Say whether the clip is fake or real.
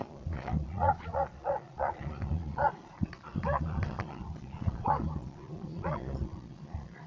fake